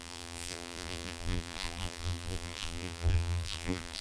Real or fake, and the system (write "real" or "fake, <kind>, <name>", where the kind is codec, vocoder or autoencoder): fake, vocoder, BigVGAN v2